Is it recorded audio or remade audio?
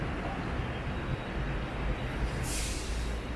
recorded